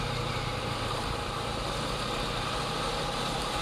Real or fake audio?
real